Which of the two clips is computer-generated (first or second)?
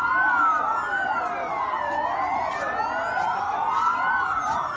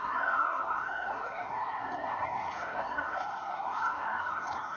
second